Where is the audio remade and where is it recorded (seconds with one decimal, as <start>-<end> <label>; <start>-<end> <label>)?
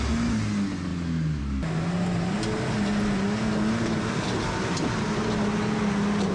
0.0-6.3 recorded